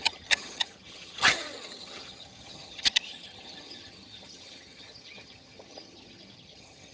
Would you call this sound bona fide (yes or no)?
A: no